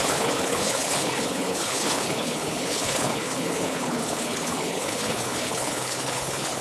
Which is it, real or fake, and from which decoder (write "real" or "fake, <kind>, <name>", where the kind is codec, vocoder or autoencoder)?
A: fake, codec, HILCodec